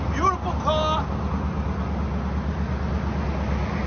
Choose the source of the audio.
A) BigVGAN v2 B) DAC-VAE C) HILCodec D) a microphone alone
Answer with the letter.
D